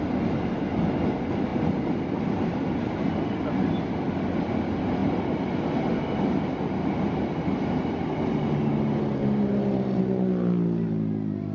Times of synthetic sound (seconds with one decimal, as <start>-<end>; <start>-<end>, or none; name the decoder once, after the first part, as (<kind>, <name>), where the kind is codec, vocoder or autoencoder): none